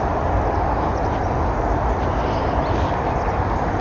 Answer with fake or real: real